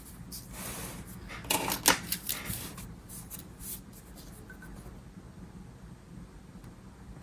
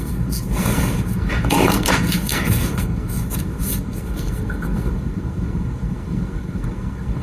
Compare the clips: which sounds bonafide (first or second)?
first